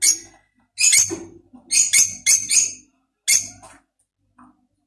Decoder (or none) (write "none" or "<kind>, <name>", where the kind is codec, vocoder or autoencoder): none